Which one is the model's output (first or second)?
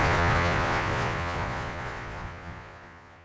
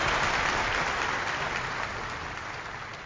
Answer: first